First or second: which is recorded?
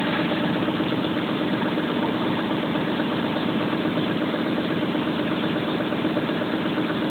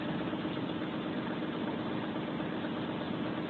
second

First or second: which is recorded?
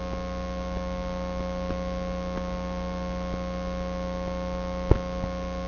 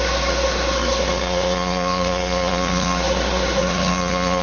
first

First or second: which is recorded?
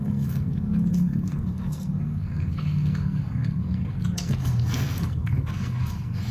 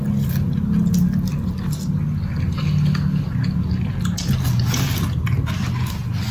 second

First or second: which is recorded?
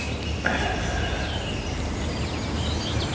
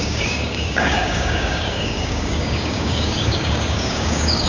first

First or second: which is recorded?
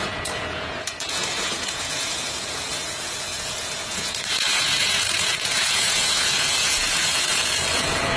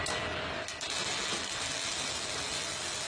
second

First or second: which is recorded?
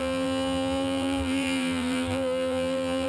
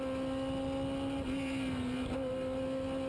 second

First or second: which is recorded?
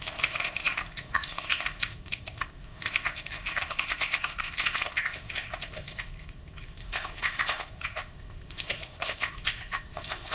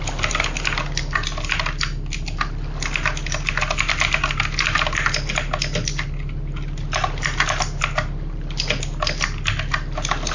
second